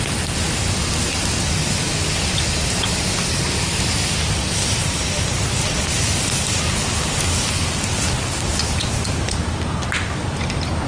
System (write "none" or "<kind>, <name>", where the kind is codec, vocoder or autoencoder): none